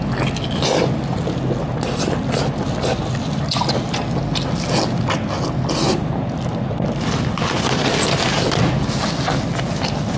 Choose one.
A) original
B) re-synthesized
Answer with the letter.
A